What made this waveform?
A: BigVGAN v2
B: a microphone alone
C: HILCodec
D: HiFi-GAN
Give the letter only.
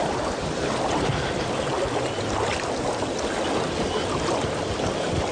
B